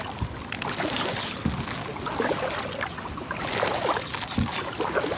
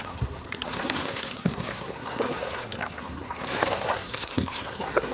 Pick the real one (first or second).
first